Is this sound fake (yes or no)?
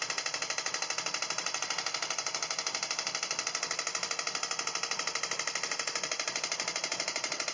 yes